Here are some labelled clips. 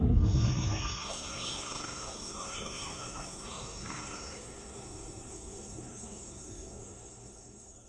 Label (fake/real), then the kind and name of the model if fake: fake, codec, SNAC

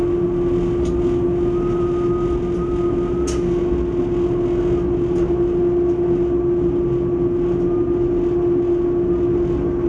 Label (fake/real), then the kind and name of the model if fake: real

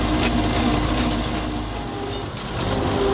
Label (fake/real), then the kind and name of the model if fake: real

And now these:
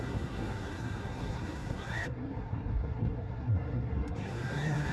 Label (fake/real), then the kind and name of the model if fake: fake, codec, SNAC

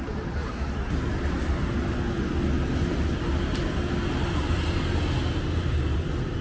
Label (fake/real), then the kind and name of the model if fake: real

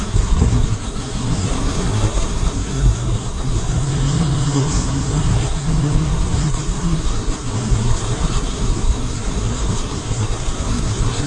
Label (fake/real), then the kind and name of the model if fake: fake, codec, SNAC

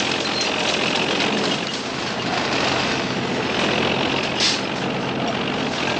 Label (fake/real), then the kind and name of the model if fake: real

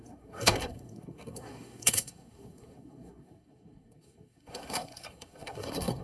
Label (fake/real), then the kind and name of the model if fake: fake, codec, SNAC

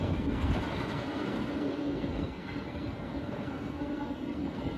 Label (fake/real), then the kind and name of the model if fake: fake, codec, SNAC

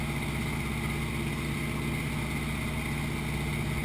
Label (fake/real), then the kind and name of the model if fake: real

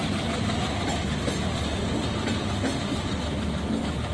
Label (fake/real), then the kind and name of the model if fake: real